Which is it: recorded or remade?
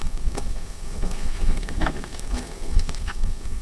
remade